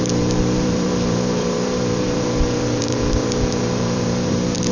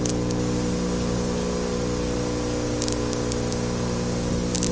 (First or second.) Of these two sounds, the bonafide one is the second